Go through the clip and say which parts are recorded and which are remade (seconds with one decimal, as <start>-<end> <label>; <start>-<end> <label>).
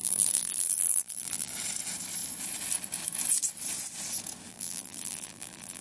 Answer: 0.0-1.5 remade; 1.5-4.5 recorded; 4.5-5.8 remade